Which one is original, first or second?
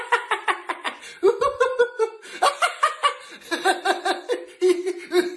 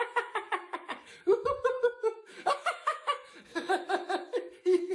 first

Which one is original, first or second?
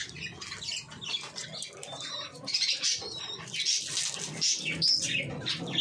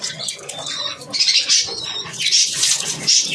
first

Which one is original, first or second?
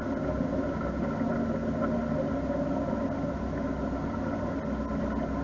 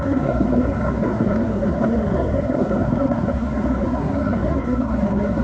first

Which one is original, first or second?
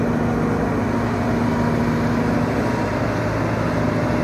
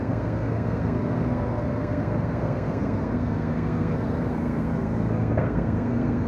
first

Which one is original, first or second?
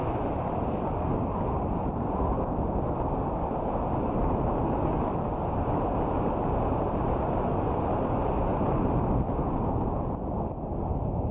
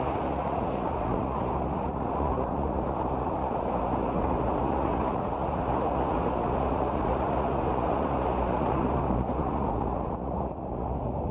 first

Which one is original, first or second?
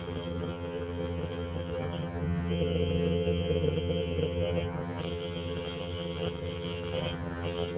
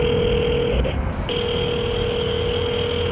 second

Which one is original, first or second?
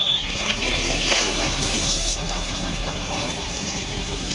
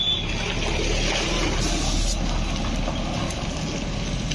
second